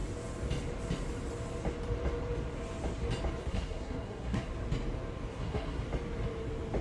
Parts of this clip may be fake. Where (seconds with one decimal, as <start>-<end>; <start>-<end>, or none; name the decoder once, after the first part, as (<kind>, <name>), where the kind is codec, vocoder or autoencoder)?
3.4-4.5 (codec, SNAC); 5.3-5.8